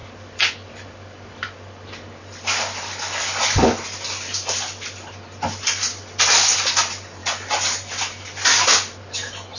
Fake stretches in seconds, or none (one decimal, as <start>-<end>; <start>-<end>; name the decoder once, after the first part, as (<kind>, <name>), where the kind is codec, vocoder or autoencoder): none